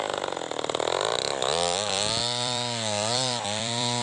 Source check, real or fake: fake